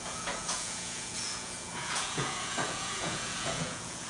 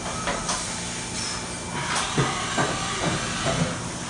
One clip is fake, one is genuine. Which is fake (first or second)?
first